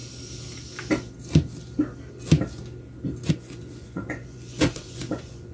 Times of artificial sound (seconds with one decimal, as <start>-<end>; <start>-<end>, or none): 3.3-5.5